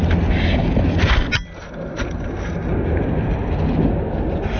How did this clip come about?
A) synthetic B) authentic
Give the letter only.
B